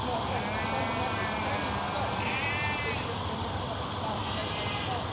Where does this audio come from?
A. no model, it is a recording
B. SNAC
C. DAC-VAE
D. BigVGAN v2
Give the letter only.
A